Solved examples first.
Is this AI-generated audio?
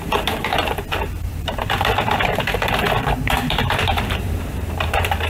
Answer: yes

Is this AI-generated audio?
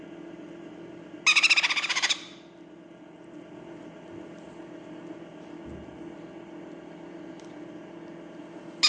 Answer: no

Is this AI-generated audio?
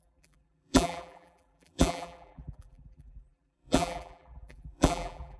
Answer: yes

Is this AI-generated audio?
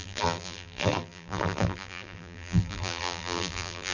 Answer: yes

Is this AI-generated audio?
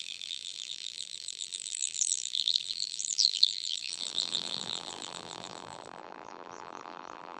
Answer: yes